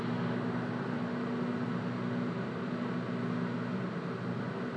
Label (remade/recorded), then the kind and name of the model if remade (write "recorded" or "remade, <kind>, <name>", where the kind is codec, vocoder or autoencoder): recorded